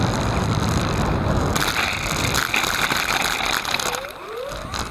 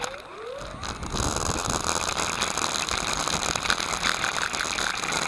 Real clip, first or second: second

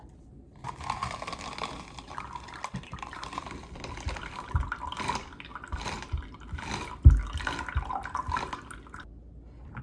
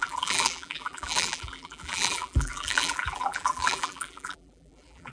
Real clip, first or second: first